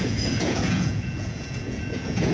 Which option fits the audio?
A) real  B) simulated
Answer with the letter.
B